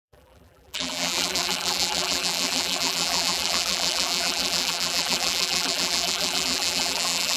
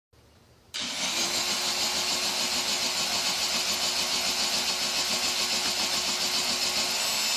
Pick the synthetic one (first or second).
first